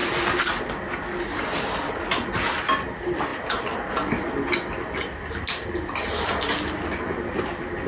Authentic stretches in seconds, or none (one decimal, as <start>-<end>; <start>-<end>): 0.0-7.9